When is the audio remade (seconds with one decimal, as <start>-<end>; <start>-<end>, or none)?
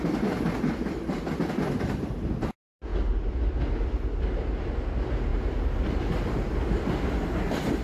none